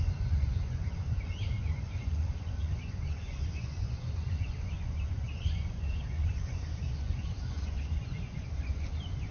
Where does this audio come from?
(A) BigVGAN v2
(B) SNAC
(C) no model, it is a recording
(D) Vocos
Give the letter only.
D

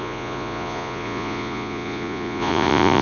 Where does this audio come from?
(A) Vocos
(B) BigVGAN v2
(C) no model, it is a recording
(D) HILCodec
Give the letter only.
A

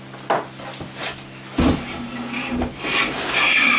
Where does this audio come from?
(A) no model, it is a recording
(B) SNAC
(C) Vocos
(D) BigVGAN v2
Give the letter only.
A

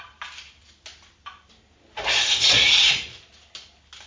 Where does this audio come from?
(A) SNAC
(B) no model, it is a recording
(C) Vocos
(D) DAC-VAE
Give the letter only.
B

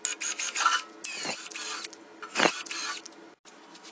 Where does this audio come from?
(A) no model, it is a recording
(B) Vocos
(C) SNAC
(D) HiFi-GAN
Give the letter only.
A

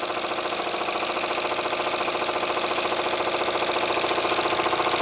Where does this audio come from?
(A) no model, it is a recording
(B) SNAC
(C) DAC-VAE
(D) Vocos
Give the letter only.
A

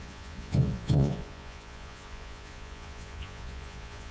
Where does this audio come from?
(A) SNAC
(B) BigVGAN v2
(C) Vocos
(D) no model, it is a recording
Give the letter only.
C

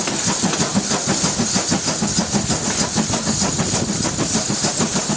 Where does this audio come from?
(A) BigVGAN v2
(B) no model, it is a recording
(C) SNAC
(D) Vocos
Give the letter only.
B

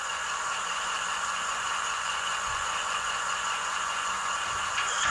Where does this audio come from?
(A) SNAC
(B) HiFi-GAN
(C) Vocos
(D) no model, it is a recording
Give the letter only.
C